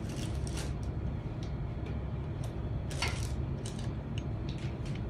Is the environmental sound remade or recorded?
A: recorded